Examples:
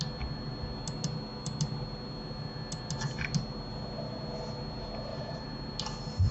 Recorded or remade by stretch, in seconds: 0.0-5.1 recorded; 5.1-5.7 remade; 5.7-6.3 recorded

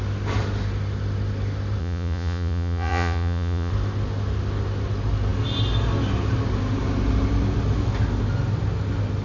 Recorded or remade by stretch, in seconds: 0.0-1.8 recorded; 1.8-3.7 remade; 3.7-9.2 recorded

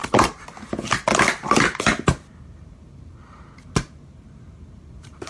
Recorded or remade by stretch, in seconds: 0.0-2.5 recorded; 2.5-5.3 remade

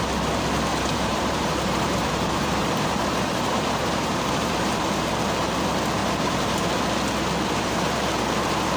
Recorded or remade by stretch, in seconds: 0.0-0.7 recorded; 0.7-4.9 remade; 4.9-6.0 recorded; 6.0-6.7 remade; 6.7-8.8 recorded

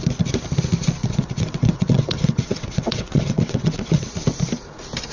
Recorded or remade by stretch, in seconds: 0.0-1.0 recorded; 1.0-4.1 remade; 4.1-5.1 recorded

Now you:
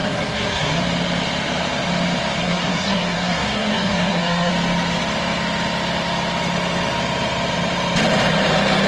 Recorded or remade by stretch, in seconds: 0.0-0.8 remade; 0.8-2.4 recorded; 2.4-4.5 remade; 4.5-8.9 recorded